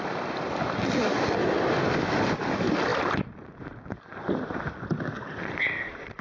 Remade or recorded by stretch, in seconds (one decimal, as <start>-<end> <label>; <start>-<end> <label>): 0.0-2.9 recorded; 2.9-4.6 remade; 4.6-6.2 recorded